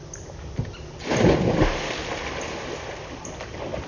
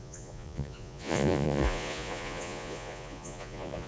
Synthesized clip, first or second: second